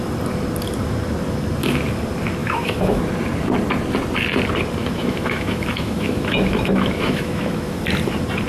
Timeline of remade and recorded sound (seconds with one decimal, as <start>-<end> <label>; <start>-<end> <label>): 0.0-2.4 recorded; 2.4-3.0 remade; 3.0-4.8 recorded; 4.8-7.8 remade; 7.8-8.5 recorded